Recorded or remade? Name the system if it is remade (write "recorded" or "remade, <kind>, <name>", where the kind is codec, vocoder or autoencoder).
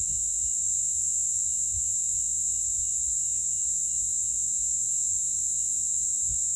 remade, vocoder, Vocos